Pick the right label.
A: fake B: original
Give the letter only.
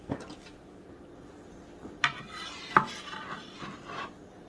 B